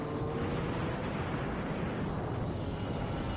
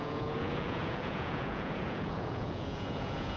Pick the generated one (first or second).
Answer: second